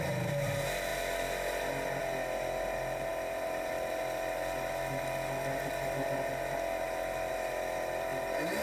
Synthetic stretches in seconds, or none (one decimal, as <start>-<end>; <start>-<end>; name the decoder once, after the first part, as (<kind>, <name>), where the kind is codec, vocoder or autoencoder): none